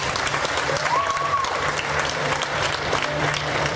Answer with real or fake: fake